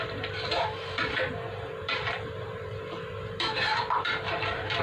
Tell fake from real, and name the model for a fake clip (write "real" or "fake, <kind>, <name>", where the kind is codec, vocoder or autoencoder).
fake, vocoder, BigVGAN v2